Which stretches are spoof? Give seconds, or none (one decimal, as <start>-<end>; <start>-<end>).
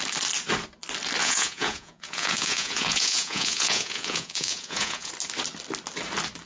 1.2-5.1